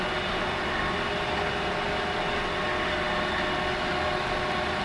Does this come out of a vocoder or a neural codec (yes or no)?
no